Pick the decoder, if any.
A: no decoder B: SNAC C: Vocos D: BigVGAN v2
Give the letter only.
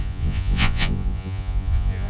C